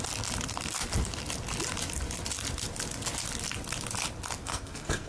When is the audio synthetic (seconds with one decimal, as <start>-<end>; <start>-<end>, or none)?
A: 4.4-5.1